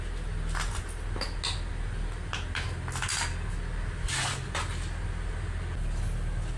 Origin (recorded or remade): recorded